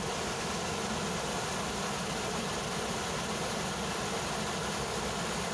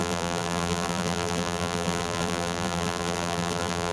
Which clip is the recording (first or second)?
first